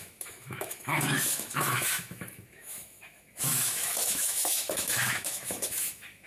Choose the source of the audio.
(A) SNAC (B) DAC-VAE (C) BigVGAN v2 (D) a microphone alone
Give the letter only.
B